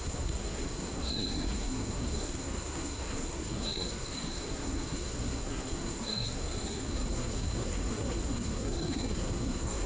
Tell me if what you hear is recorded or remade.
remade